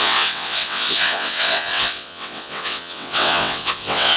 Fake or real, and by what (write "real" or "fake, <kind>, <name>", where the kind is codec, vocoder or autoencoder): fake, vocoder, WaveNeXt